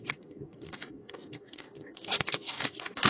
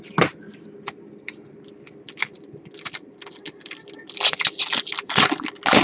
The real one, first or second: second